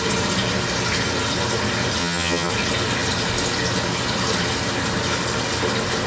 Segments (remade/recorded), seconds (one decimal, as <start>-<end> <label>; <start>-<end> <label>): 0.0-2.0 recorded; 2.0-2.5 remade; 2.5-6.1 recorded